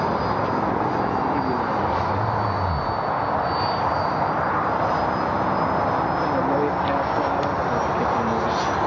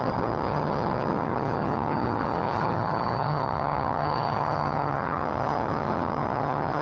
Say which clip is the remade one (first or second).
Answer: second